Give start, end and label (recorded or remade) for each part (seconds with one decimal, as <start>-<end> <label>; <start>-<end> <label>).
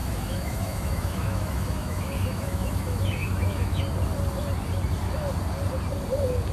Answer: 0.0-3.8 remade; 3.8-6.5 recorded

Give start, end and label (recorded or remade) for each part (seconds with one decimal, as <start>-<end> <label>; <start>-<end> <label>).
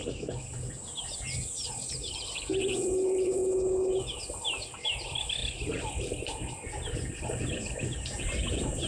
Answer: 0.0-3.4 remade; 3.4-4.3 recorded; 4.3-5.4 remade; 5.4-6.5 recorded; 6.5-8.9 remade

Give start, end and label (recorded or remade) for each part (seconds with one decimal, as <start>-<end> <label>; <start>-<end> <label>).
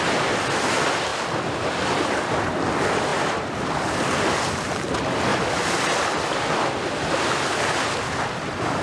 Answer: 0.0-8.8 recorded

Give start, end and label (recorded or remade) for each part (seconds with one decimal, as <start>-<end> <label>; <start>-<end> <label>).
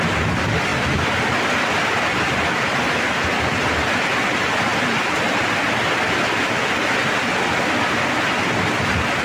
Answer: 0.0-9.2 recorded